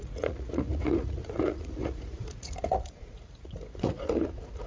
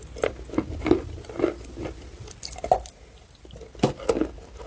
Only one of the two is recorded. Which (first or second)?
second